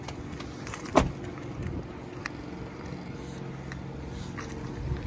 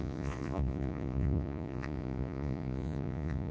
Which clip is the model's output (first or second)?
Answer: second